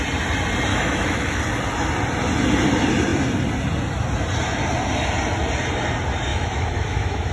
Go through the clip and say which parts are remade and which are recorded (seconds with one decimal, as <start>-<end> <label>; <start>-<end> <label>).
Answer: 0.0-0.7 recorded; 0.7-1.4 remade; 1.4-6.3 recorded; 6.3-7.3 remade

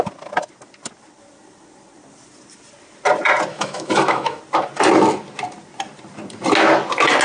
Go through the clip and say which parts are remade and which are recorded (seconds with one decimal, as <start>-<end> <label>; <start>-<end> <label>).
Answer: 0.0-3.5 recorded; 3.5-4.4 remade; 4.4-7.2 recorded

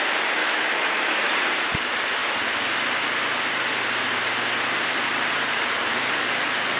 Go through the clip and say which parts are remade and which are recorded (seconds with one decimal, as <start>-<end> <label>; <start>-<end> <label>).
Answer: 0.0-0.4 recorded; 0.4-1.3 remade; 1.3-6.8 recorded

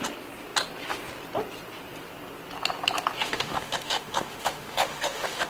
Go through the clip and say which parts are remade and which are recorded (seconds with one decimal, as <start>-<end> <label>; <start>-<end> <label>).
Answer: 0.0-3.2 recorded; 3.2-5.5 remade

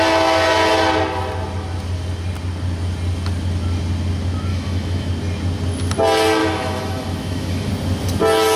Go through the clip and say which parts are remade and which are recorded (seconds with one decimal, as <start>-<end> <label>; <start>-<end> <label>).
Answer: 0.0-4.5 recorded; 4.5-5.1 remade; 5.1-6.4 recorded; 6.4-7.7 remade; 7.7-8.6 recorded

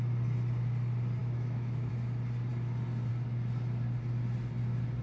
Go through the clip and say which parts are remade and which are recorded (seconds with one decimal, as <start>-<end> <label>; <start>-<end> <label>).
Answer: 0.0-1.2 recorded; 1.2-1.9 remade; 1.9-5.0 recorded

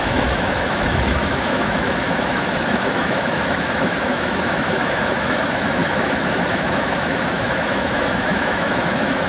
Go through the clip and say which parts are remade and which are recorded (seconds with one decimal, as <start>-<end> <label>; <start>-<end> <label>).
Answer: 0.0-9.3 remade

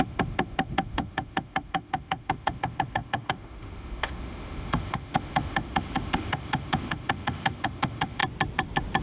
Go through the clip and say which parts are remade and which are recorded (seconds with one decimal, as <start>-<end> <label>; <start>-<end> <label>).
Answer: 0.0-8.2 remade; 8.2-9.0 recorded